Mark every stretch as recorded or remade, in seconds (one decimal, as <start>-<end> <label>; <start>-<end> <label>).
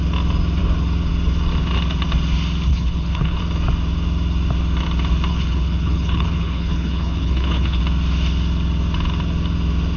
0.0-2.7 recorded; 2.7-3.4 remade; 3.4-5.3 recorded; 5.3-7.8 remade; 7.8-10.0 recorded